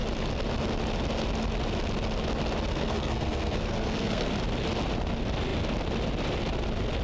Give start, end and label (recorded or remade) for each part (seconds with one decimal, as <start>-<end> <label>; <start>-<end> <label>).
0.0-2.7 recorded; 2.7-4.3 remade; 4.3-7.0 recorded

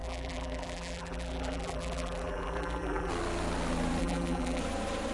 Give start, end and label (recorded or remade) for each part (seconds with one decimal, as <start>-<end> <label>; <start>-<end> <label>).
0.0-3.1 remade; 3.1-4.0 recorded; 4.0-4.6 remade; 4.6-5.1 recorded

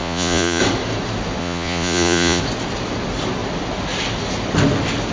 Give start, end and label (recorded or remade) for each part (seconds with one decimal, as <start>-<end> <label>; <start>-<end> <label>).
0.0-0.6 remade; 0.6-1.4 recorded; 1.4-2.4 remade; 2.4-5.1 recorded

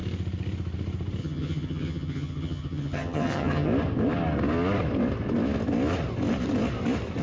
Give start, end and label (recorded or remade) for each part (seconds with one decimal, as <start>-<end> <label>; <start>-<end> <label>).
0.0-1.2 recorded; 1.2-3.7 remade; 3.7-7.2 recorded

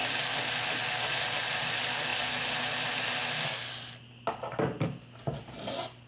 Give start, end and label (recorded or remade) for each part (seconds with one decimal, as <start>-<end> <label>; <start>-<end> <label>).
0.0-6.1 recorded

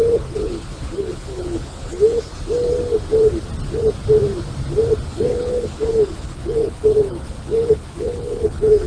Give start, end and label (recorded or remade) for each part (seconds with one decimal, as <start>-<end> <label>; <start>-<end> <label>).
0.0-2.3 remade; 2.3-5.1 recorded; 5.1-8.9 remade

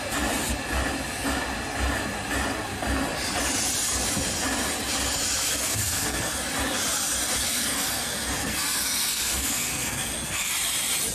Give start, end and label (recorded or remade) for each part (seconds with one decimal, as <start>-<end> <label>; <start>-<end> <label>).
0.0-5.4 recorded; 5.4-6.4 remade; 6.4-7.3 recorded; 7.3-10.5 remade; 10.5-11.1 recorded

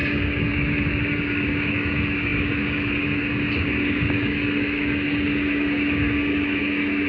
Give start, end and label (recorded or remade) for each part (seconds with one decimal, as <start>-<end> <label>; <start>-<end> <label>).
0.0-7.1 remade